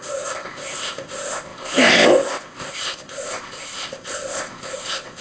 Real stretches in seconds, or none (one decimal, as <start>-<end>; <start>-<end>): none